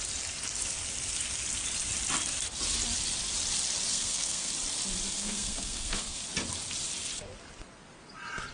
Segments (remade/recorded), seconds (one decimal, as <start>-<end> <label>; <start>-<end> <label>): 0.0-3.9 recorded; 3.9-4.5 remade; 4.5-5.1 recorded; 5.1-6.2 remade; 6.2-8.5 recorded